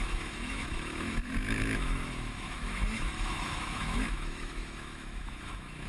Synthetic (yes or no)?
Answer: yes